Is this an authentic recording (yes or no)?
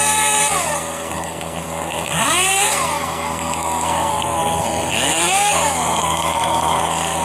no